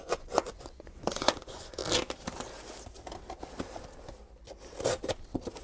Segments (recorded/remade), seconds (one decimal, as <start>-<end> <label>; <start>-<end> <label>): 0.0-1.8 remade; 1.8-5.6 recorded